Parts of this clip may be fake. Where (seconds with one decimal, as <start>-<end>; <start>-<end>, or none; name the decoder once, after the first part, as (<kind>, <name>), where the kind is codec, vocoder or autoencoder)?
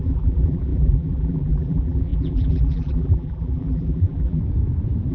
0.0-4.4 (vocoder, BigVGAN v2)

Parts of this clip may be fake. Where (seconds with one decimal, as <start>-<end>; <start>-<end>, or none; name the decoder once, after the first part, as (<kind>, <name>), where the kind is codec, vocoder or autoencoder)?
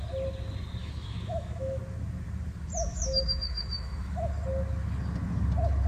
0.8-1.8 (autoencoder, DAC-VAE); 2.9-4.3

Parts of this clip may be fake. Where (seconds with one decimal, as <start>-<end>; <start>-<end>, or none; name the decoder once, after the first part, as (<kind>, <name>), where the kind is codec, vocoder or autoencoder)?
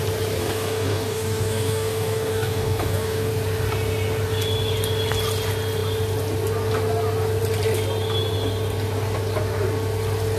0.4-3.3 (codec, DAC)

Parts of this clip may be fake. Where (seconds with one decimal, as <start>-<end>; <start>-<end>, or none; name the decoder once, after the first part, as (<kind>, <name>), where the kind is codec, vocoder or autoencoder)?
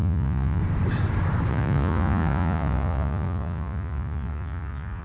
0.0-0.6 (vocoder, Vocos); 1.5-5.0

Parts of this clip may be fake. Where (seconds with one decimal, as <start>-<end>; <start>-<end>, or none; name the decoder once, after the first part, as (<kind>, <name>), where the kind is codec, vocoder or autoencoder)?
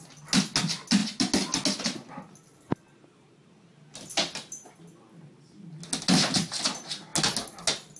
none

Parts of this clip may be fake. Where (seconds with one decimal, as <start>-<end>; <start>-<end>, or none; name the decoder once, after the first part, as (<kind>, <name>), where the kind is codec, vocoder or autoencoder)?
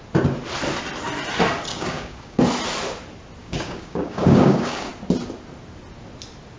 1.7-2.4 (codec, DAC); 3.4-4.9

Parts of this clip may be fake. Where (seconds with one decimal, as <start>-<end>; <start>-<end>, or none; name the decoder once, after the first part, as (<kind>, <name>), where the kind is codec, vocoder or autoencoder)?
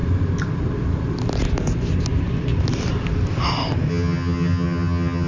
3.9-5.3 (vocoder, HiFi-GAN)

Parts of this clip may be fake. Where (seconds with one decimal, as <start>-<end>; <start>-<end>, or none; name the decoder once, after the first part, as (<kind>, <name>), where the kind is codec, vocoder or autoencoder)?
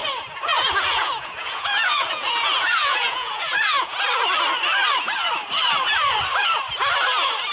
0.0-4.0 (vocoder, Vocos)